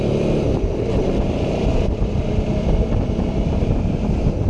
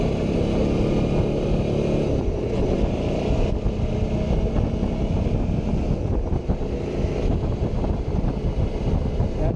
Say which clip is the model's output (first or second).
first